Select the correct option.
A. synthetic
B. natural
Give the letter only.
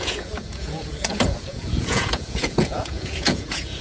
A